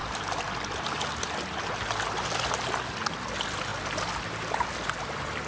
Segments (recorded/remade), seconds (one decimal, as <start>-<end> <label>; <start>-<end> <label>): 0.0-5.5 recorded